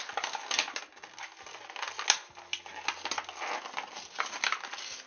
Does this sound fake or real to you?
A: real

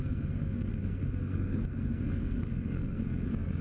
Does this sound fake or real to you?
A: fake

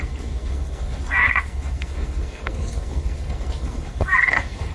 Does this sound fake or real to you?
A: fake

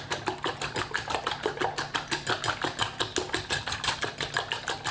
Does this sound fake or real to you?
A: real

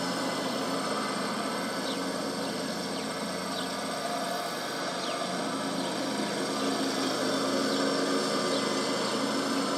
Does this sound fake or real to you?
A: real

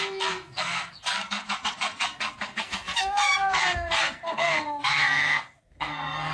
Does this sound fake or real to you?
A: fake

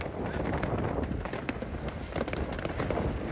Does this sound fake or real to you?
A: real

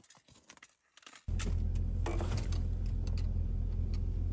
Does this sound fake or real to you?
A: real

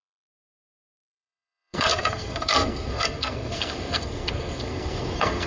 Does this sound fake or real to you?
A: fake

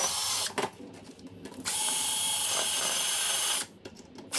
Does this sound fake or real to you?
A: real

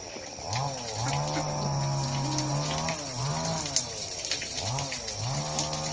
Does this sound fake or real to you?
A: real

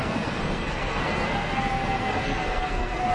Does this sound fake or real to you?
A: fake